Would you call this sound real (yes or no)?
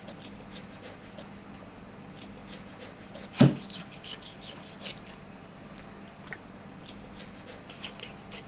yes